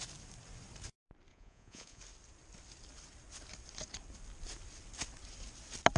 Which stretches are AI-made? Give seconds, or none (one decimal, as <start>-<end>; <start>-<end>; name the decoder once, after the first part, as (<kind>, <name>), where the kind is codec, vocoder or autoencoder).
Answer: 1.3-2.0 (vocoder, Vocos)